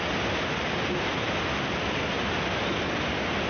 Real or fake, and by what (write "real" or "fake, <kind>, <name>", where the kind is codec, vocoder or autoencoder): real